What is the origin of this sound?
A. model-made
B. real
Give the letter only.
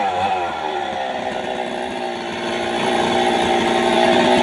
A